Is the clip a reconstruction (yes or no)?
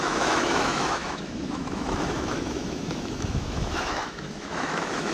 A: yes